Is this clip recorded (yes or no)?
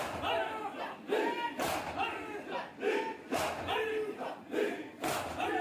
yes